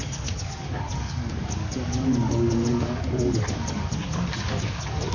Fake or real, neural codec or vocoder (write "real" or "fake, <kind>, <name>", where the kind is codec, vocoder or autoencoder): fake, codec, DAC